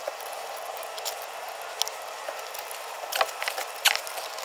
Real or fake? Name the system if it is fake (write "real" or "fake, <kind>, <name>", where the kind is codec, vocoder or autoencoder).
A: real